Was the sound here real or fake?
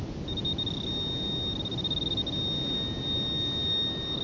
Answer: real